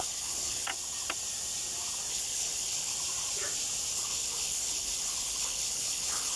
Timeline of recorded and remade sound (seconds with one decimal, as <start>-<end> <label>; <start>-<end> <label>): 0.0-0.7 remade; 0.7-2.1 recorded; 2.1-2.9 remade; 2.9-3.9 recorded; 3.9-6.4 remade